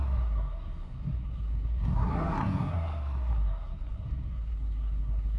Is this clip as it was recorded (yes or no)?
no